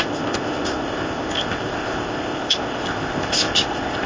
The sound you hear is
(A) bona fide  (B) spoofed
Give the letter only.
B